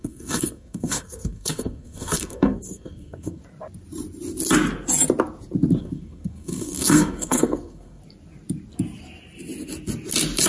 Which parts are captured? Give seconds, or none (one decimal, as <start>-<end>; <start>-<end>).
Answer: 3.4-5.8; 8.0-10.5